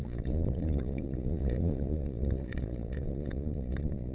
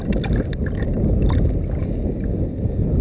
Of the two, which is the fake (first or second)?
first